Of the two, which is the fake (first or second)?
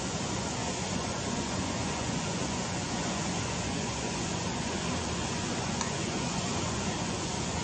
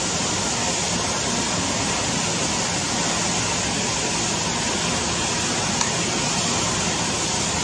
first